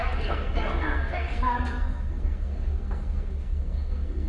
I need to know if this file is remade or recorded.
remade